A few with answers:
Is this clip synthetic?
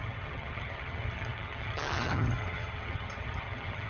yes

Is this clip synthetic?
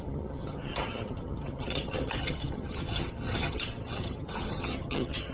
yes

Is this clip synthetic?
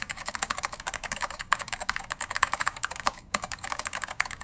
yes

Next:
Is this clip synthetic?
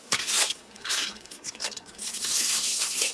yes